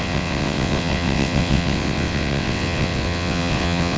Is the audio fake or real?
fake